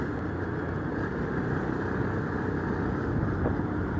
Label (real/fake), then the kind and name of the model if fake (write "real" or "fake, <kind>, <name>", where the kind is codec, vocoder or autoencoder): real